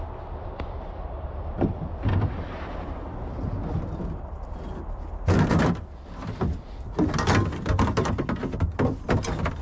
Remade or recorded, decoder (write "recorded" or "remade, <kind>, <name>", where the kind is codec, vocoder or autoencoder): recorded